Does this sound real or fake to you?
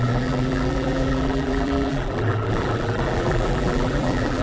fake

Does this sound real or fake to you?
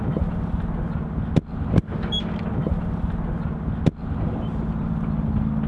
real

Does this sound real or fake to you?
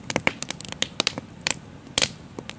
real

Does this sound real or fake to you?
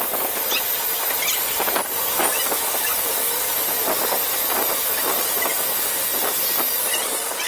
real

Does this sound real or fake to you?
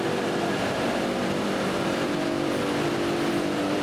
fake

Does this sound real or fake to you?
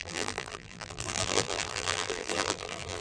fake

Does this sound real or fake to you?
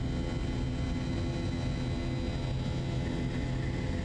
real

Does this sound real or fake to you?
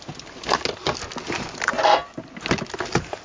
real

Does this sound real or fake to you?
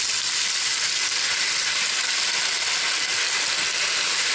real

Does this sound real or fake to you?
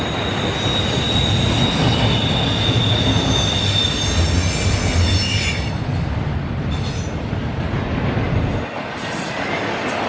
real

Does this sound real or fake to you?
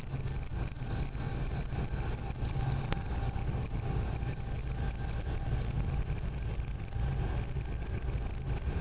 real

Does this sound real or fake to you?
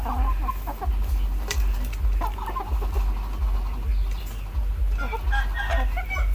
real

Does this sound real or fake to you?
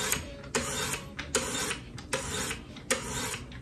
real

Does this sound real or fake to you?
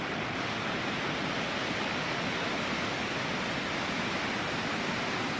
real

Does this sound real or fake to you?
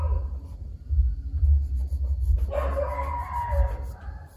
real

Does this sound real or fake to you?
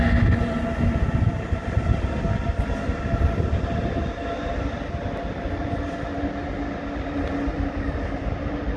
real